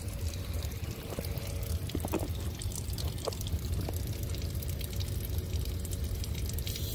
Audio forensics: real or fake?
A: fake